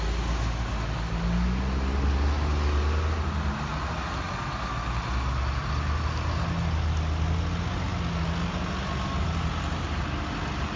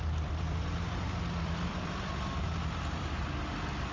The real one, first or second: first